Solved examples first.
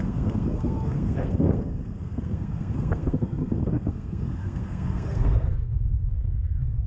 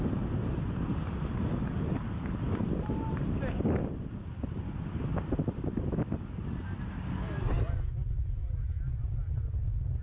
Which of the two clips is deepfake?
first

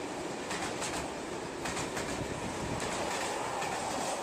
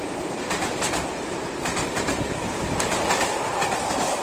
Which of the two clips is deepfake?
second